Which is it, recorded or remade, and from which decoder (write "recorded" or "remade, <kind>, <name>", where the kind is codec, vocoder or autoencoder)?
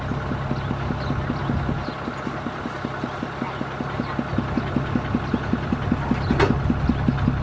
recorded